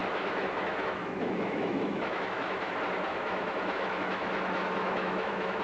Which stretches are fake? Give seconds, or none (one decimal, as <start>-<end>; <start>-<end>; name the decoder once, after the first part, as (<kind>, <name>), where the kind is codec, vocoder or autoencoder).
0.0-2.7 (autoencoder, DAC-VAE); 3.1-5.6